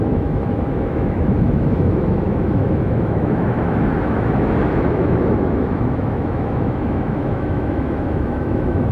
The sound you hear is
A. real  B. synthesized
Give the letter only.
B